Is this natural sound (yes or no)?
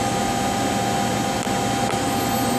yes